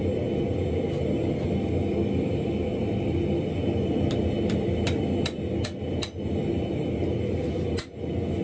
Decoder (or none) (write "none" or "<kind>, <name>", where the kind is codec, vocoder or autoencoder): none